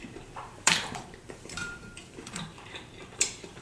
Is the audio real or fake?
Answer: fake